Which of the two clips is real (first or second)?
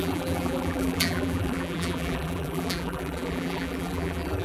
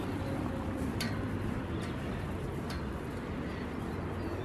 second